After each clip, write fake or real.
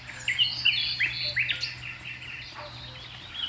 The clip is real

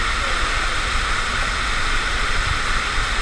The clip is real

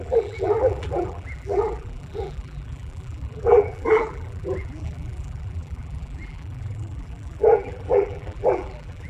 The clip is fake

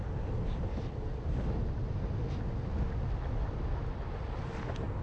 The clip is real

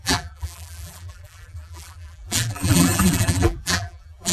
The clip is fake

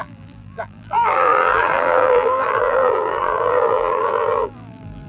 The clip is fake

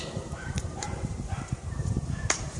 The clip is fake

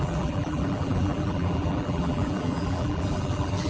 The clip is fake